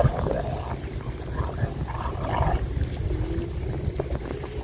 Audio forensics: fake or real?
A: real